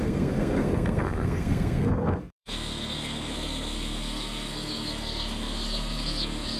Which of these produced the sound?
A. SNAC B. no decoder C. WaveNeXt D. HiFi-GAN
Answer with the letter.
A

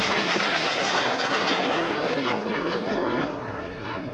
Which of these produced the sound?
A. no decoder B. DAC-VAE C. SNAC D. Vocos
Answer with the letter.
C